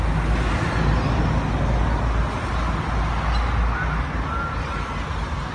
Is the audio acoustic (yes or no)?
yes